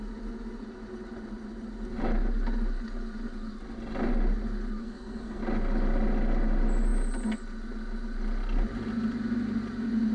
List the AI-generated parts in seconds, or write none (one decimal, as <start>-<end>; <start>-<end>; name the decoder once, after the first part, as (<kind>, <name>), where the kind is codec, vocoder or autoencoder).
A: 4.8-5.4 (codec, SNAC)